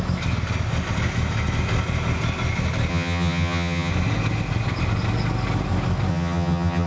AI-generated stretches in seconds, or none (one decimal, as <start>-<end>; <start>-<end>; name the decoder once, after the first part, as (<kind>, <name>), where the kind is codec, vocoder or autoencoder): 2.9-3.9 (vocoder, HiFi-GAN); 6.1-6.9